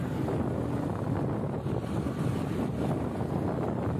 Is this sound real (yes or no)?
yes